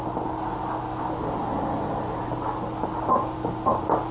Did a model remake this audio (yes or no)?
no